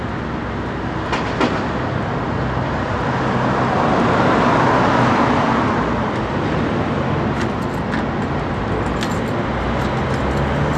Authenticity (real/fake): real